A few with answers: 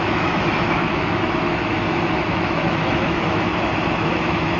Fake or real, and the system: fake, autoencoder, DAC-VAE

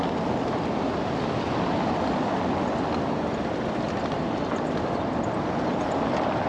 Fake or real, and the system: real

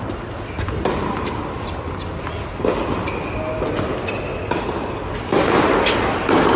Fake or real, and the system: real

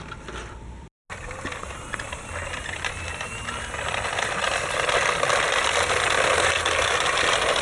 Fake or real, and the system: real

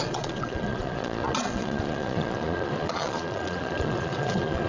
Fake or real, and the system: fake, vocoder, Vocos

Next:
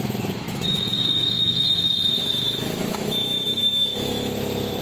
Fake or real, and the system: fake, autoencoder, DAC-VAE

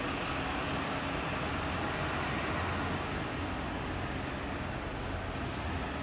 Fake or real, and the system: real